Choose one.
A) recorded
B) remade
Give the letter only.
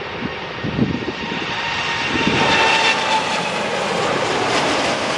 A